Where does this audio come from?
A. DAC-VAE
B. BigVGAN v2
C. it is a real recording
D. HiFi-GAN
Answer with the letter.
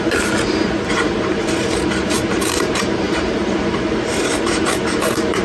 B